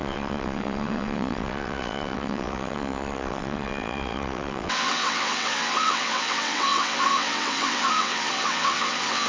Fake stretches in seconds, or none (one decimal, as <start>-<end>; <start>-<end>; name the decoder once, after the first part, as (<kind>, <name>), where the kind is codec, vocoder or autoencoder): 0.0-9.3 (vocoder, WaveNeXt)